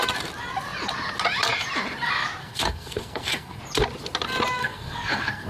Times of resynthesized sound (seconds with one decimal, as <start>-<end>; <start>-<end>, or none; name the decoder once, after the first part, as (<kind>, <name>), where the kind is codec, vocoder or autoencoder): 2.4-3.6 (codec, SNAC); 4.6-5.5